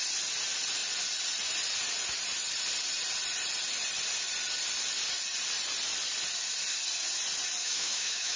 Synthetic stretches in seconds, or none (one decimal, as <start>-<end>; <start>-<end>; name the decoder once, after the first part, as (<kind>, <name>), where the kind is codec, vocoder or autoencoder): 7.6-8.4 (autoencoder, DAC-VAE)